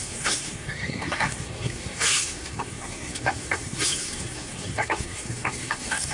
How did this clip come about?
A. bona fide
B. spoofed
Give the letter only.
B